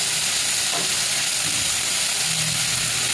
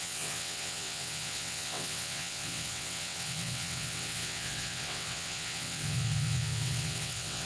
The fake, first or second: second